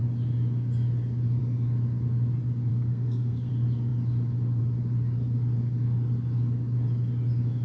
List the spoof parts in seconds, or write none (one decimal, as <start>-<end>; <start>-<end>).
2.7-3.5